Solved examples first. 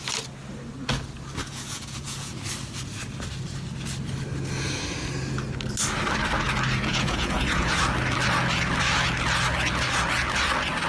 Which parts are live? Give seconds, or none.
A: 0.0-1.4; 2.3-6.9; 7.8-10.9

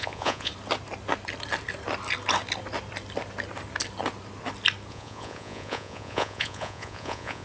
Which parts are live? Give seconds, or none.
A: 0.5-4.9

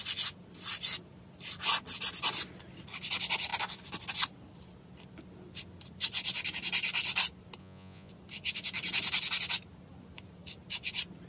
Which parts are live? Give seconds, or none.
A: 0.0-7.6; 8.1-11.3